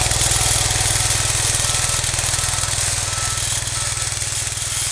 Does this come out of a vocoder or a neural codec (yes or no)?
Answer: no